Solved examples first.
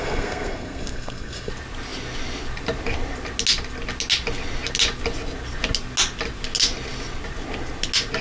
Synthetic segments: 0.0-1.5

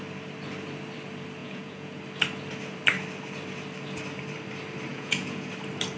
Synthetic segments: 1.4-2.0; 4.9-5.5

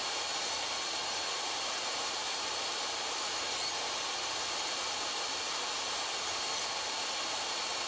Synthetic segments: 2.2-5.2

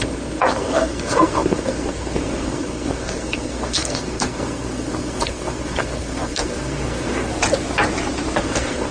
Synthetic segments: 0.0-7.3; 8.4-8.9